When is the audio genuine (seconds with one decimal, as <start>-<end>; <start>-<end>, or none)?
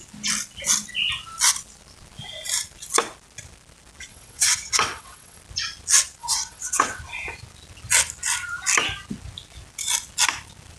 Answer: 0.0-4.1; 5.4-6.2; 7.0-10.8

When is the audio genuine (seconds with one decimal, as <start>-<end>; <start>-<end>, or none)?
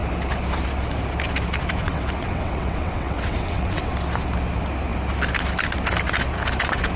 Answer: 0.0-1.8; 3.9-7.0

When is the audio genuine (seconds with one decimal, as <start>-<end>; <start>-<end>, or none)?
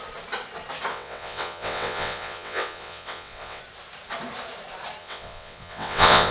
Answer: 0.0-0.9; 3.6-5.0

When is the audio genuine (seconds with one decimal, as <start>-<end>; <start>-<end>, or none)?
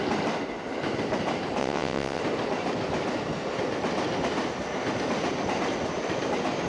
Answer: 0.0-1.6; 2.2-6.7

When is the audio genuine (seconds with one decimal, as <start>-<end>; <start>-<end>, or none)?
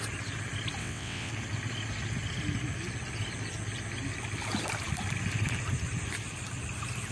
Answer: 0.0-0.8; 1.3-7.1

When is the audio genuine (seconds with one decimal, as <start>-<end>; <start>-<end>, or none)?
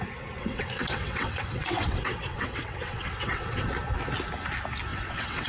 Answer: 0.0-0.4; 3.7-4.9